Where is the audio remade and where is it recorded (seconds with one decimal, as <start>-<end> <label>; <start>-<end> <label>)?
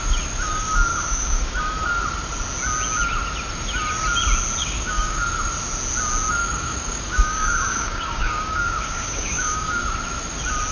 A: 0.0-0.9 recorded; 0.9-1.6 remade; 1.6-4.6 recorded; 4.6-5.2 remade; 5.2-6.4 recorded; 6.4-9.8 remade; 9.8-10.7 recorded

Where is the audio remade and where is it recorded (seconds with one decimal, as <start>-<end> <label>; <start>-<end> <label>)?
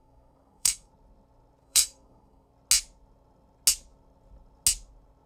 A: 0.0-0.9 remade; 0.9-1.6 recorded; 1.6-2.5 remade; 2.5-5.3 recorded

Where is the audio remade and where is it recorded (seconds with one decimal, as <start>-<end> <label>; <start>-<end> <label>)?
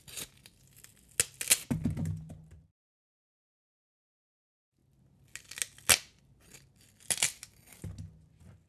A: 0.0-8.7 recorded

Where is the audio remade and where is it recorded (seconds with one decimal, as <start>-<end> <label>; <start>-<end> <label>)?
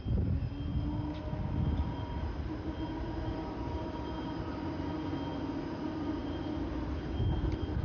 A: 0.0-6.2 recorded; 6.2-7.1 remade; 7.1-7.8 recorded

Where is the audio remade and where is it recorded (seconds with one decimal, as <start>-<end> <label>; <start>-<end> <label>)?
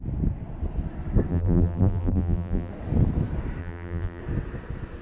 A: 0.0-1.3 recorded; 1.3-2.7 remade; 2.7-3.6 recorded; 3.6-4.2 remade; 4.2-5.0 recorded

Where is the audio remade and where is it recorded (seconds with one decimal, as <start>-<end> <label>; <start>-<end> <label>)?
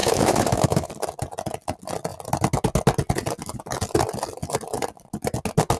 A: 0.0-0.9 remade; 0.9-5.8 recorded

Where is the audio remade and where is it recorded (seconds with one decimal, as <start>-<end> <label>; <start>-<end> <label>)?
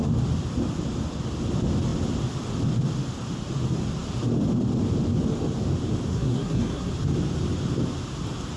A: 0.0-6.1 recorded; 6.1-6.9 remade; 6.9-8.6 recorded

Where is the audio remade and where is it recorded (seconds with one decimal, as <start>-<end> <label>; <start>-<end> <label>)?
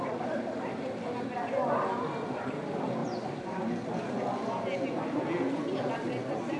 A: 0.0-3.0 recorded; 3.0-3.7 remade; 3.7-6.6 recorded